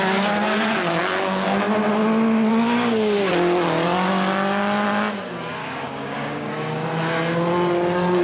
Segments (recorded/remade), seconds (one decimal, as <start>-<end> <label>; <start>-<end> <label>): 0.0-2.5 recorded; 2.5-3.2 remade; 3.2-5.6 recorded; 5.6-6.5 remade; 6.5-8.2 recorded